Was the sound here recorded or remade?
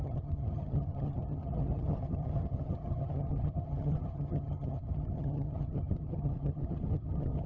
remade